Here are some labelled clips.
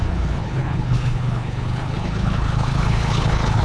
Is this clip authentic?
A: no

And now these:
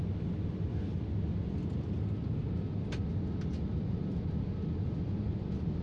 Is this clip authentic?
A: yes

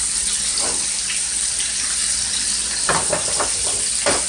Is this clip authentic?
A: yes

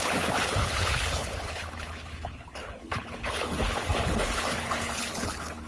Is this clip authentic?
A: no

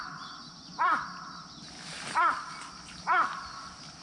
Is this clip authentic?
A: yes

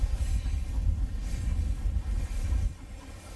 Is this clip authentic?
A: yes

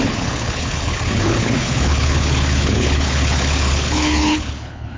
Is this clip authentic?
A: no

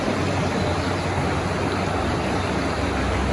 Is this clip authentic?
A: yes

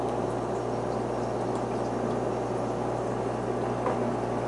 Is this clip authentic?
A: yes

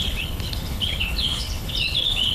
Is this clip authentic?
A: no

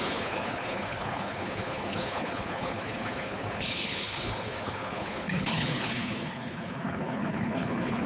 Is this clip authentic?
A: no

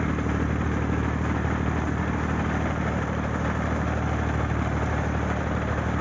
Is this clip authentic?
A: yes